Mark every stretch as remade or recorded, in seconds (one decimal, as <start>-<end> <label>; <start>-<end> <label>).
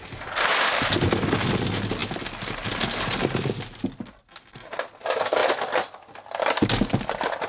0.0-7.5 recorded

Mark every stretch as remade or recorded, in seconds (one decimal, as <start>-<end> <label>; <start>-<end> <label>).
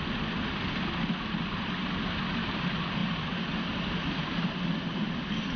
0.0-5.6 recorded